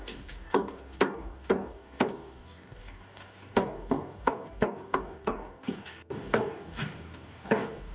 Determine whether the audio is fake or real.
fake